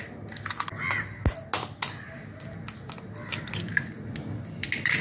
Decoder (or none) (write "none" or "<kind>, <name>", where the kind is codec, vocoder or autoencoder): none